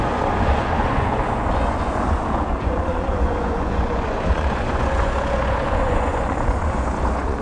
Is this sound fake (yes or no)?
yes